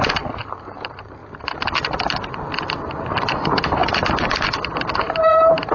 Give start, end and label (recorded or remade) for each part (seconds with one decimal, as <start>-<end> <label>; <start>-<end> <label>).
0.0-1.2 remade; 1.2-3.2 recorded; 3.2-5.7 remade

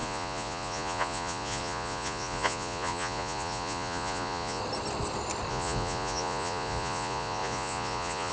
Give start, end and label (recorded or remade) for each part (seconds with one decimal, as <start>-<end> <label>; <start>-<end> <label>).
0.0-4.6 remade; 4.6-5.5 recorded; 5.5-8.3 remade